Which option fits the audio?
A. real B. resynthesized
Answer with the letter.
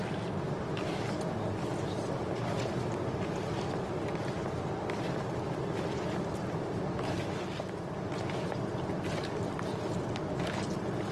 A